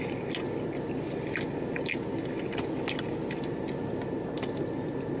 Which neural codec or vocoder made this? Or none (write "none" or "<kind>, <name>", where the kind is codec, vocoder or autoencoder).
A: none